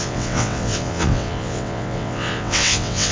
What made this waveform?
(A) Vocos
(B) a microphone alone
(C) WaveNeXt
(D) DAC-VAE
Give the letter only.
C